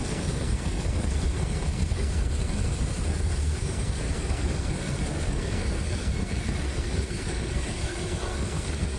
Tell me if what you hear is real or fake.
fake